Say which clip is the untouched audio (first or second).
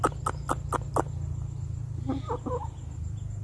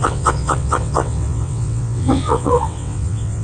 first